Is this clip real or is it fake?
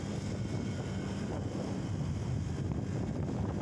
real